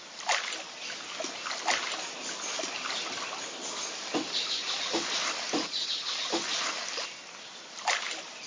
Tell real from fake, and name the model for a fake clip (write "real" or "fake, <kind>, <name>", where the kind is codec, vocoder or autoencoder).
real